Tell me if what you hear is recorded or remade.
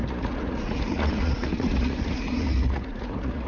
remade